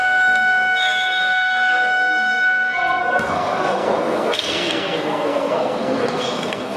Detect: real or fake fake